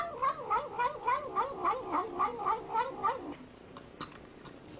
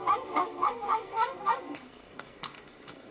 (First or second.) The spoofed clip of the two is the second